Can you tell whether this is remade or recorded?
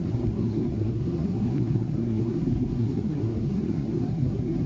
remade